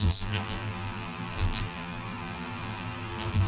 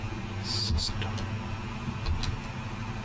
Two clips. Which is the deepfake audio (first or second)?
first